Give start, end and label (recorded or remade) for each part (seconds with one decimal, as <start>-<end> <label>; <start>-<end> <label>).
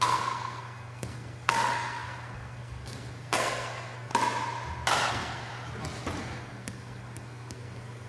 0.0-4.1 remade; 4.1-5.1 recorded; 5.1-5.5 remade; 5.5-6.2 recorded; 6.2-8.1 remade